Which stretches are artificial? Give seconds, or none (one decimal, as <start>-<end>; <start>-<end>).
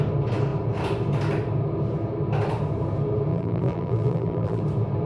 3.3-4.6